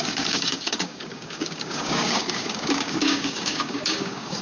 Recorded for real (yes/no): no